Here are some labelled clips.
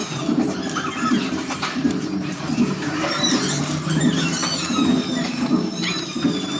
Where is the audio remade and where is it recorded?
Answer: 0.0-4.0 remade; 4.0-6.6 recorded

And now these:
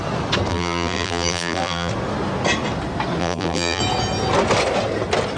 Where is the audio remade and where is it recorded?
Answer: 0.0-0.5 recorded; 0.5-1.9 remade; 1.9-3.2 recorded; 3.2-3.8 remade; 3.8-5.4 recorded

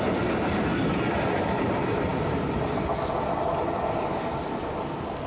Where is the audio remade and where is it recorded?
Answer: 0.0-5.3 recorded

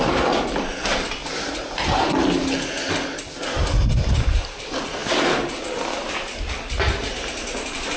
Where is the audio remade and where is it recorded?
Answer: 0.0-1.2 remade; 1.2-4.2 recorded; 4.2-8.0 remade